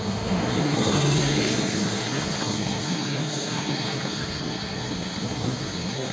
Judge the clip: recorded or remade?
remade